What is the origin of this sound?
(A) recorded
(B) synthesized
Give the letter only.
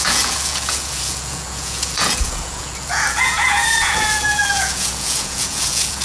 B